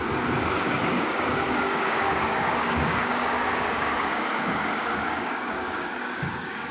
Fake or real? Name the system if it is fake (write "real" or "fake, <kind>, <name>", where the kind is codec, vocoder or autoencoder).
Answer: fake, codec, DAC